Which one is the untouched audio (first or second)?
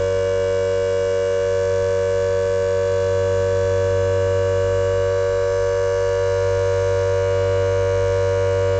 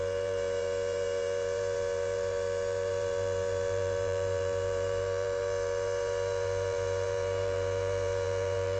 first